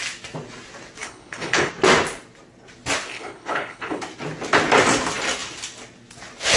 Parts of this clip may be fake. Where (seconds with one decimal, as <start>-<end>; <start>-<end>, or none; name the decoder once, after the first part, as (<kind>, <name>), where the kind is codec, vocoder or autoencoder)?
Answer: 1.0-1.7 (codec, HILCodec); 3.1-4.0